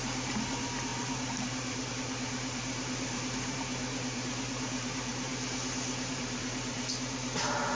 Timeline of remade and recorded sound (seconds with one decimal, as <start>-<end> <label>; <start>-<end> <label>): 0.0-5.3 remade; 5.3-6.1 recorded; 6.1-7.7 remade